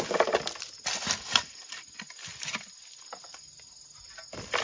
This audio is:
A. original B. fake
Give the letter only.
A